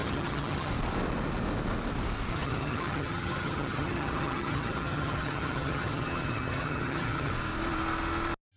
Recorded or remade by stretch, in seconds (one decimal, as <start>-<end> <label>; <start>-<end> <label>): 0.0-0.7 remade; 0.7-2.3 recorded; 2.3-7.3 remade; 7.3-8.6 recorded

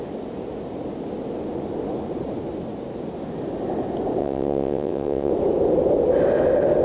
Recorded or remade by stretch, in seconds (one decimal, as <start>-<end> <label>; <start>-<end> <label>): 0.0-4.2 recorded; 4.2-5.3 remade; 5.3-6.8 recorded

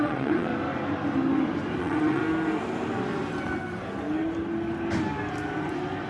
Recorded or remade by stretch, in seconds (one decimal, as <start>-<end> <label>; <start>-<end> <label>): 0.0-0.5 remade; 0.5-1.8 recorded; 1.8-2.2 remade; 2.2-6.1 recorded